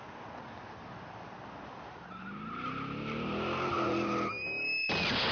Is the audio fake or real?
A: real